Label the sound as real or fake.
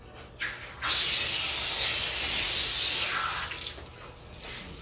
real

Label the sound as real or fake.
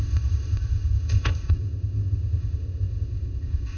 fake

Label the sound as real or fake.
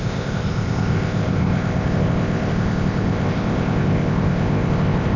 fake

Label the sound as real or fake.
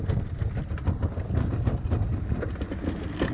real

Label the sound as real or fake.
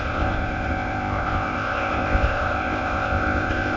fake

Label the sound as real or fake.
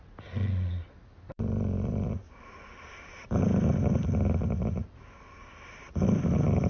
real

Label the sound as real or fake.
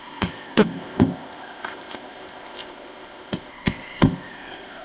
fake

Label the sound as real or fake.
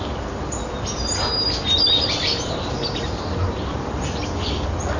real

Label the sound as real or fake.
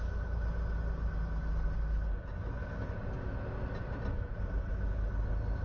real